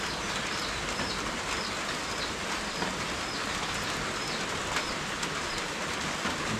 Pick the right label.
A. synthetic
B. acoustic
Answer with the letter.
B